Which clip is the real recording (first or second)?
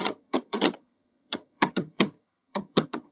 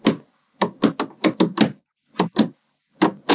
second